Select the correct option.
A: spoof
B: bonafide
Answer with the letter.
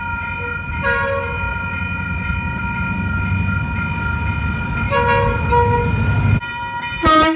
B